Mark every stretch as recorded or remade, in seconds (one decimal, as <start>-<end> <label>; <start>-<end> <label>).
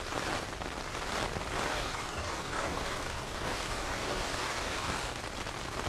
0.0-1.7 recorded; 1.7-5.2 remade; 5.2-5.9 recorded